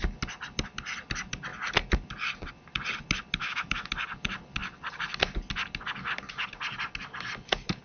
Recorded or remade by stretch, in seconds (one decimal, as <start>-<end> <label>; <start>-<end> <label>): 0.0-3.4 recorded; 3.4-3.9 remade; 3.9-7.8 recorded